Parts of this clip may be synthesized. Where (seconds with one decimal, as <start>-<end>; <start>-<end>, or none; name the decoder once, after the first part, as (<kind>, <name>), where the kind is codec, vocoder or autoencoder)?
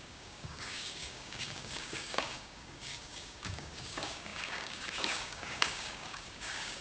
0.0-6.8 (codec, DAC)